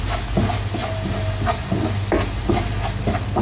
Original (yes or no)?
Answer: yes